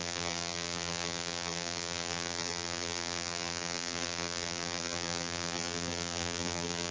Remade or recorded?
remade